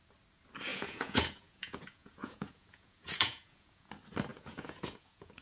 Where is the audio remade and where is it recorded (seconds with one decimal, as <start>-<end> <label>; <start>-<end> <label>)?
0.0-0.7 recorded; 0.7-3.9 remade; 3.9-4.3 recorded; 4.3-5.4 remade